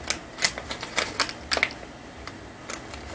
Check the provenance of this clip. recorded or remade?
recorded